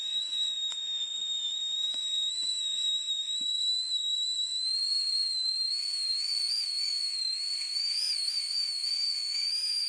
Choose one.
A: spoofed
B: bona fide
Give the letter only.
A